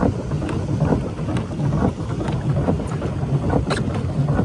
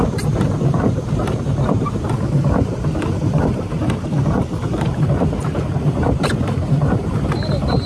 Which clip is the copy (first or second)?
second